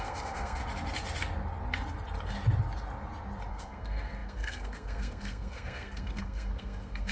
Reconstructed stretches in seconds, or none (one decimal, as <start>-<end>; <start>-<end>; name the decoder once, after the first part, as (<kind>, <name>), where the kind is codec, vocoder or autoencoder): 0.0-0.6 (codec, SNAC); 3.5-7.1